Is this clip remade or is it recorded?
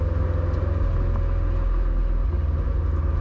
recorded